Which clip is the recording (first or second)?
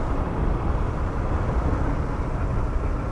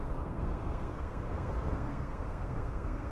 first